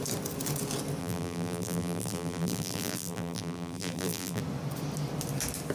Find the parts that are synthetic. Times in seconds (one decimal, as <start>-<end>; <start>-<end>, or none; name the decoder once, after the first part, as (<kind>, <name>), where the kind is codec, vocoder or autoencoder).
1.0-4.4 (vocoder, BigVGAN v2)